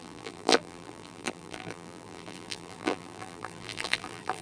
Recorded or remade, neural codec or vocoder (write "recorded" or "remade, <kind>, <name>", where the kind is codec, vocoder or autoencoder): remade, vocoder, BigVGAN v2